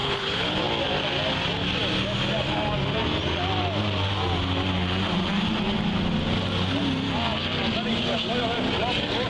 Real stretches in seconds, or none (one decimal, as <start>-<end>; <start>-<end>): 0.6-9.3